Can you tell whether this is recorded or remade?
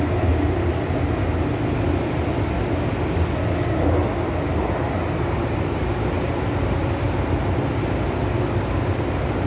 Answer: recorded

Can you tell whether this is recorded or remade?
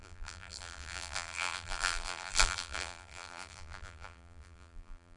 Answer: remade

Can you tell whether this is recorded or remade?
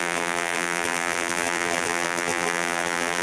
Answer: remade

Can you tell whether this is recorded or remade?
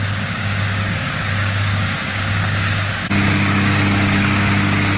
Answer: remade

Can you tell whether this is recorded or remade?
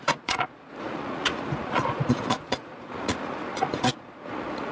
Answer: remade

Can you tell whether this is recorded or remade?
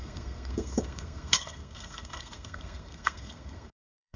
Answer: remade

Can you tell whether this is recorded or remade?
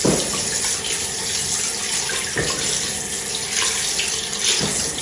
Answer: recorded